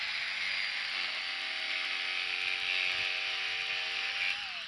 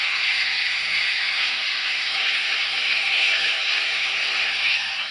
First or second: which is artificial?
second